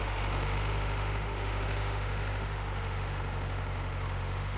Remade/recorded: remade